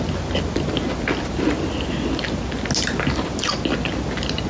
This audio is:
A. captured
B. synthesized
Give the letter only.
A